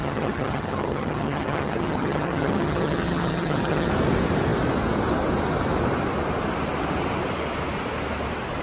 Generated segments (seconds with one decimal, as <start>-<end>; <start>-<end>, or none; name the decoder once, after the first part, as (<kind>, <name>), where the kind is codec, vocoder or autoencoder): 0.0-3.9 (vocoder, HiFi-GAN)